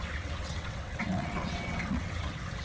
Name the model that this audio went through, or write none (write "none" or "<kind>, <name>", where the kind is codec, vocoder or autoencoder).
vocoder, WaveNeXt